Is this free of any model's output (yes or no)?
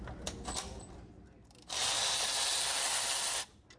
yes